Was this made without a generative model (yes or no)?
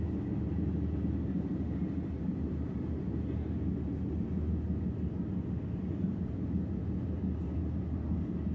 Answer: yes